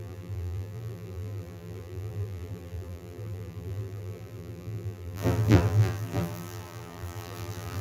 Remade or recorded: remade